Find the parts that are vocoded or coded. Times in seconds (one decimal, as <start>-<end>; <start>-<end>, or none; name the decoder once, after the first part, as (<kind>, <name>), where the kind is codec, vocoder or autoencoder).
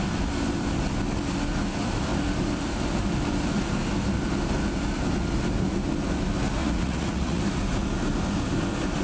6.6-7.4 (vocoder, Vocos)